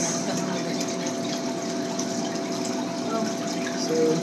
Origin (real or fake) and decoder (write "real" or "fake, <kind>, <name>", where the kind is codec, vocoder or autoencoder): real